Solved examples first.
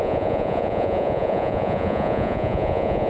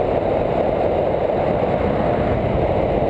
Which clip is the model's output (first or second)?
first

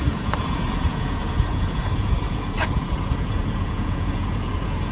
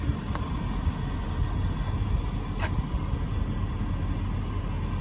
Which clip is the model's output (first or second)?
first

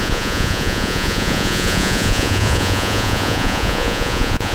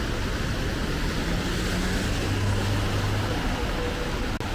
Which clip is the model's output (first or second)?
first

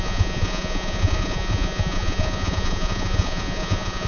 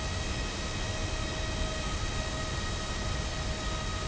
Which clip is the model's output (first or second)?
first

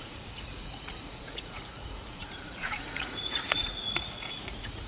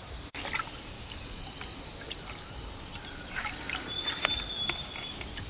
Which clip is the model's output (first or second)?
first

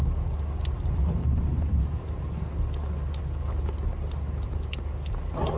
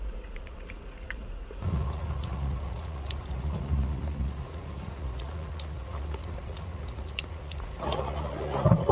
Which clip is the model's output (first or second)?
second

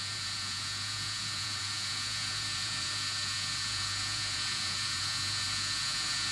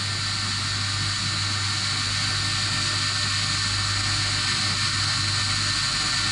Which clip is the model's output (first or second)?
first